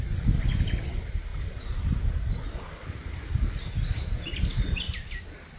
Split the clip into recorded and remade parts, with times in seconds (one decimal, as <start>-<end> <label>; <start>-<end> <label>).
0.0-5.6 recorded